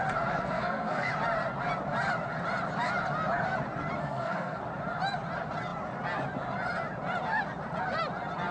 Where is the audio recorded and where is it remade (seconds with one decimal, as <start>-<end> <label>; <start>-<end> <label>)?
0.0-0.4 recorded; 0.4-1.1 remade; 1.1-4.0 recorded; 4.0-4.6 remade; 4.6-8.5 recorded